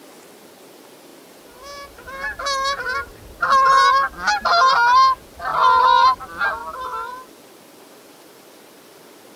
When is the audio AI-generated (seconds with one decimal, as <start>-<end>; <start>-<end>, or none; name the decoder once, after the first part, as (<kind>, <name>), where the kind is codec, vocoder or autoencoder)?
none